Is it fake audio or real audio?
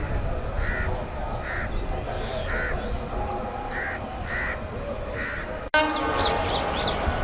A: real